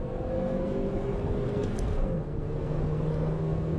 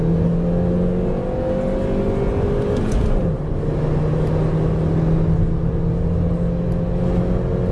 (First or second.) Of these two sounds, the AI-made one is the first